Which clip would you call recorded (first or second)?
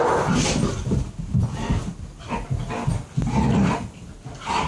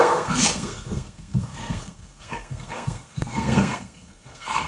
first